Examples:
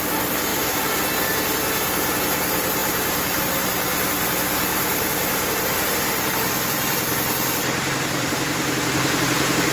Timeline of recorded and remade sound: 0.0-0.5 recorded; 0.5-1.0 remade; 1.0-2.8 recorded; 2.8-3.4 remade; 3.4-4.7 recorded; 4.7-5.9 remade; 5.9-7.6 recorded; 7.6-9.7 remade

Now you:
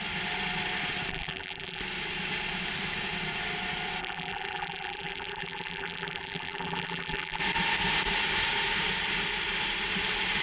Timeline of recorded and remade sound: 0.0-1.1 recorded; 1.1-1.8 remade; 1.8-4.0 recorded; 4.0-7.4 remade; 7.4-10.4 recorded

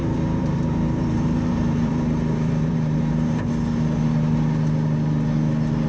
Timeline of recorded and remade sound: 0.0-3.5 remade; 3.5-5.9 recorded

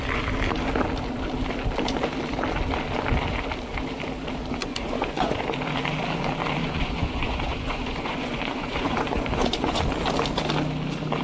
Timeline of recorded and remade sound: 0.0-4.6 recorded; 4.6-5.4 remade; 5.4-6.6 recorded; 6.6-9.8 remade; 9.8-11.2 recorded

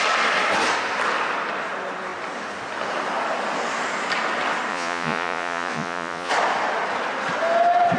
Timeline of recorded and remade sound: 0.0-4.7 recorded; 4.7-6.3 remade; 6.3-8.0 recorded

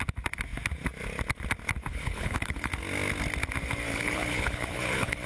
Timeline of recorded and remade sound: 0.0-1.9 recorded; 1.9-2.7 remade; 2.7-3.9 recorded; 3.9-5.3 remade